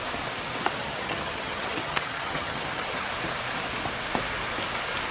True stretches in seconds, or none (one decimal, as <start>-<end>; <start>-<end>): 0.0-0.8; 3.1-5.1